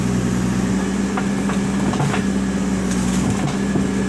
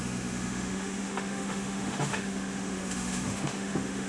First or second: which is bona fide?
first